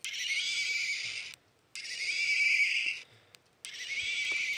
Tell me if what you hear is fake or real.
real